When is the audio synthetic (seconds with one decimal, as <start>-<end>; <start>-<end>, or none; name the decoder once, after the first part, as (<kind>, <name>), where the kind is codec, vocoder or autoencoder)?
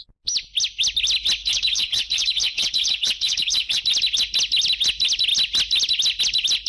1.4-3.8 (codec, HILCodec)